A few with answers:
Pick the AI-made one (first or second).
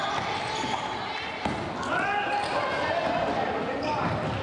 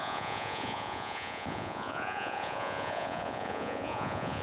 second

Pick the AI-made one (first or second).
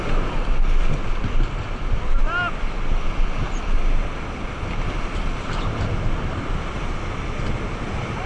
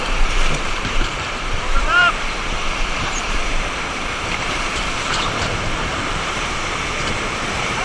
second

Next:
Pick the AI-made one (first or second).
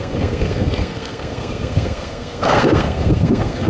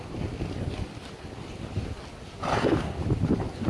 first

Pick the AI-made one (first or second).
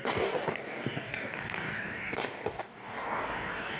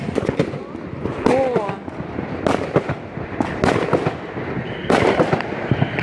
first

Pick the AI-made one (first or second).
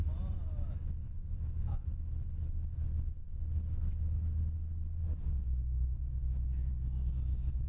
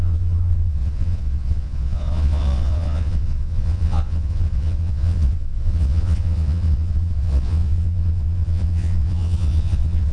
second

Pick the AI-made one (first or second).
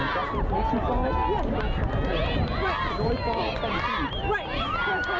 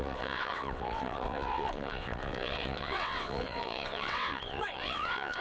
second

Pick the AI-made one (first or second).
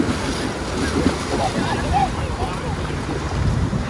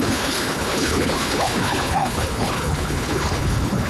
second